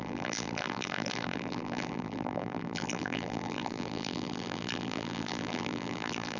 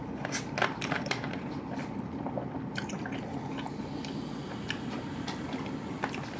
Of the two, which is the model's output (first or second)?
first